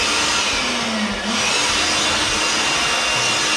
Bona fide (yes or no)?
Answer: yes